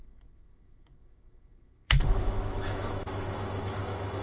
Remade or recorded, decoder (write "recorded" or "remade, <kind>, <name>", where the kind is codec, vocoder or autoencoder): remade, autoencoder, DAC-VAE